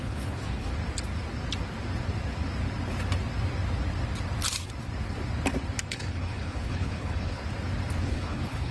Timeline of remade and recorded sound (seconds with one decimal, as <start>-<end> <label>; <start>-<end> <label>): 0.0-0.7 remade; 0.7-5.9 recorded; 5.9-7.4 remade; 7.4-8.0 recorded; 8.0-8.7 remade